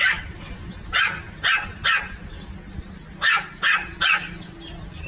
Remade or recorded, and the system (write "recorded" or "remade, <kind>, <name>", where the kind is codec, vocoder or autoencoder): recorded